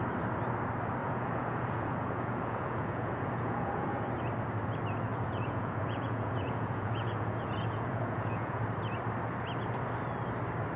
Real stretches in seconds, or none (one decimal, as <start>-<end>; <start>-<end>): 0.0-1.0; 4.0-5.1; 8.6-10.8